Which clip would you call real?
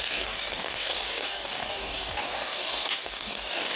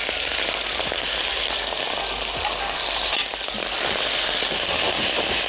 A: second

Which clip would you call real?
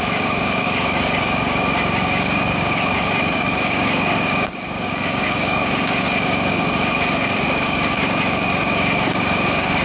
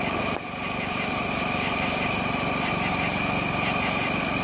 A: second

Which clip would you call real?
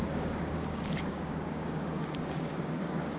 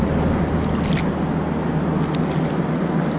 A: second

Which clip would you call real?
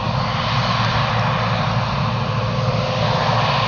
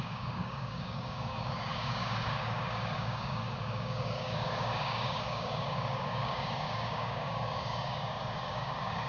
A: first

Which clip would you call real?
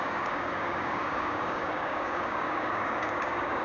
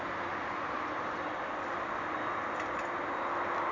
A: second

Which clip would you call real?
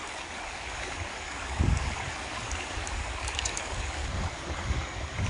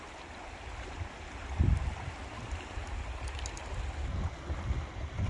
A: second